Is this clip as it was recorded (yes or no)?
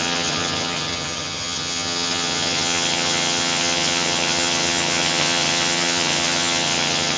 no